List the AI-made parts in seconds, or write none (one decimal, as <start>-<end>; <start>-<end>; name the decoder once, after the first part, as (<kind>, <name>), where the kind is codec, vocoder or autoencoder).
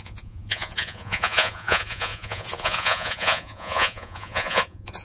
0.0-5.0 (vocoder, Vocos)